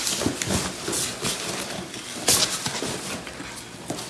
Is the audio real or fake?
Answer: real